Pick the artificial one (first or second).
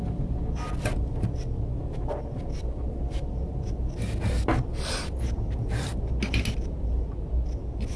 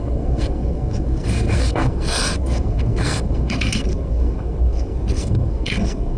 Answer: second